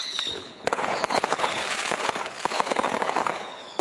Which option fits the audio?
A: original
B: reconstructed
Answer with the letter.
B